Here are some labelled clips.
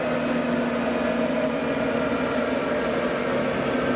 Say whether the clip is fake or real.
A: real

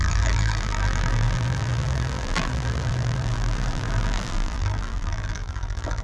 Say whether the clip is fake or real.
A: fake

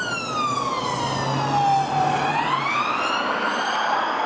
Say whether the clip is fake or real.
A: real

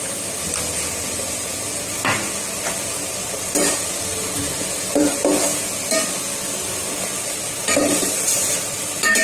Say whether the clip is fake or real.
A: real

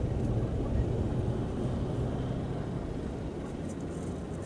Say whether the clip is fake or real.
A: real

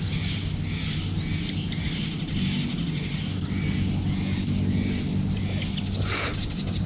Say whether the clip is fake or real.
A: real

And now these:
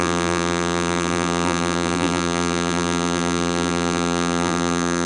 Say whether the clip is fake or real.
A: fake